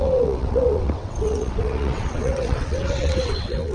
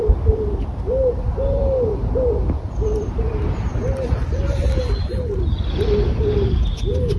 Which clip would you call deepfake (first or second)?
first